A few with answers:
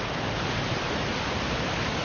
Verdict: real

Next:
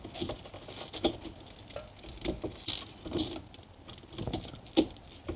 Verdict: real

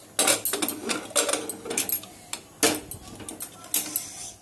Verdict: real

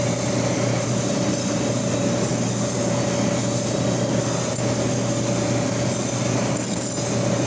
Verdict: real